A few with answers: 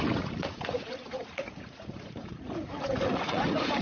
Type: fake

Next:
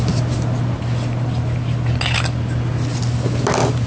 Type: real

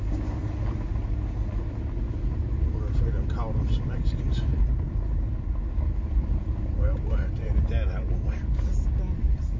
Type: real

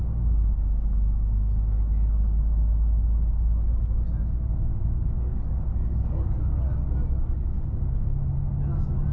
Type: real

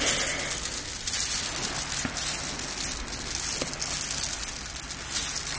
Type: real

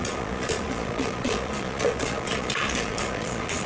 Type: fake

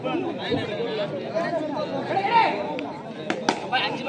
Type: real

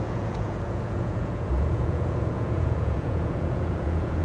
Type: fake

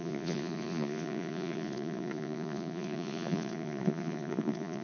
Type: fake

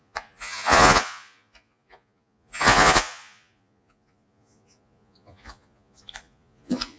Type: fake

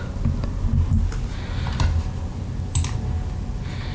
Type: real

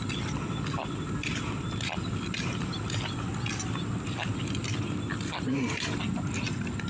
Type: real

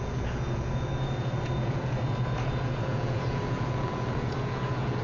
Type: fake